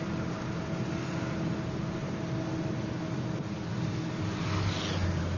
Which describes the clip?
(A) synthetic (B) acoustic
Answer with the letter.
B